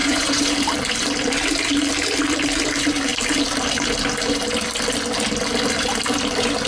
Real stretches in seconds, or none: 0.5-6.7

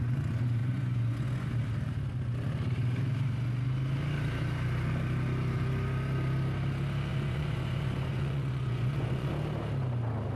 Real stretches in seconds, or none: 0.0-0.6; 1.5-7.1; 9.3-10.4

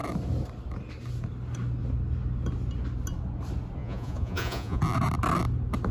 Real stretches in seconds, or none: 0.0-3.8; 4.8-5.9

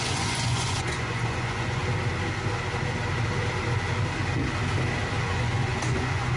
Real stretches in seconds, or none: 1.8-5.2